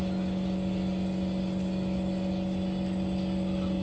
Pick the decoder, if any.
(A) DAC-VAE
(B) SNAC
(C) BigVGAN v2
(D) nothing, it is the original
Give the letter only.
D